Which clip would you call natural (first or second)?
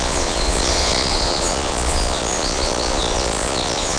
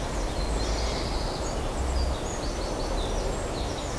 second